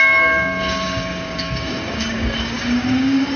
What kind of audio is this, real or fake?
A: fake